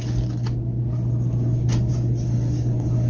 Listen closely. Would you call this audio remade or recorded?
recorded